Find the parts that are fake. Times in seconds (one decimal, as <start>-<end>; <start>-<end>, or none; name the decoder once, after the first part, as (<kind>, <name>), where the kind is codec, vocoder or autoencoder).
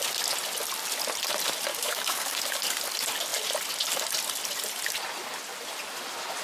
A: 1.7-2.6 (codec, DAC)